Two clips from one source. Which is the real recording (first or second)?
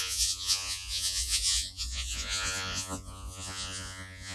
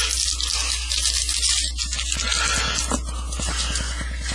second